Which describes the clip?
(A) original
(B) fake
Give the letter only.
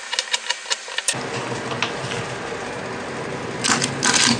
A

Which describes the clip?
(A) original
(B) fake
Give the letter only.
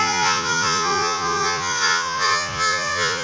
B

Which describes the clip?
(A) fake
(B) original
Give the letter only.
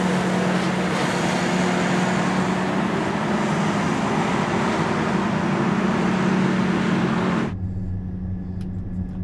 B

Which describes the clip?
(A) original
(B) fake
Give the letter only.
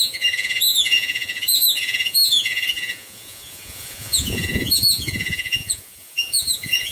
B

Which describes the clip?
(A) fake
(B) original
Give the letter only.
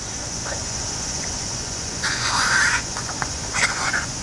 A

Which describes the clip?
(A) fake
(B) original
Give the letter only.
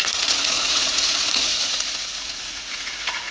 A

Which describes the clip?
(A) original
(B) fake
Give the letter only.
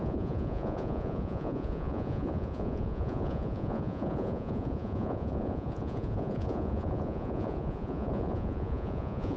B